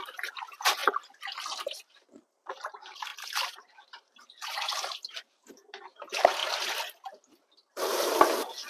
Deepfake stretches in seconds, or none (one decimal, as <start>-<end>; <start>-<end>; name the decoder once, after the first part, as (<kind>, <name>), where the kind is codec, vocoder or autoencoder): 0.0-0.8 (vocoder, BigVGAN v2); 2.2-6.4